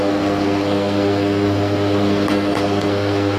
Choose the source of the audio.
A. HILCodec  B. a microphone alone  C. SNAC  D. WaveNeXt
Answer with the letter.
C